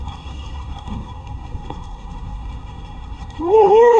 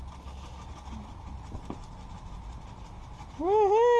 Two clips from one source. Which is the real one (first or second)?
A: second